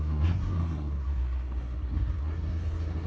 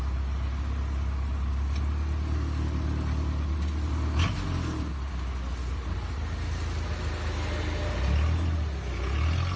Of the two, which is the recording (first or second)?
second